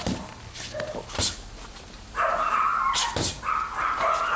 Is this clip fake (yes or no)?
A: no